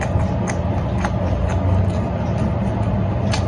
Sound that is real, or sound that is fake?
real